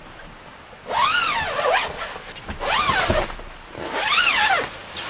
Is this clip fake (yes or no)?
no